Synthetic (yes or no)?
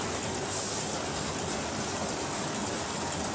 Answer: no